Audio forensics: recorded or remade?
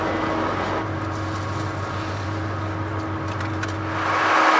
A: recorded